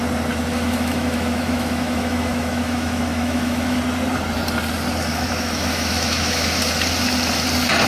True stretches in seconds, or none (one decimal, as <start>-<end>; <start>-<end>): 0.0-0.5; 3.8-5.1; 6.6-7.9